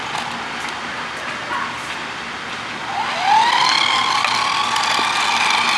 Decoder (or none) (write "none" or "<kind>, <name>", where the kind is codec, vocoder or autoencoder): none